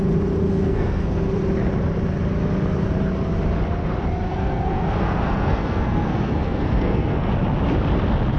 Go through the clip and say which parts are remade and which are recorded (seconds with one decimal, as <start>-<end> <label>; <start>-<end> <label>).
0.0-0.4 recorded; 0.4-1.3 remade; 1.3-4.3 recorded; 4.3-7.3 remade; 7.3-8.4 recorded